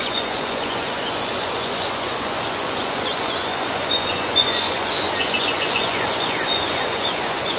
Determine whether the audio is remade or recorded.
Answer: remade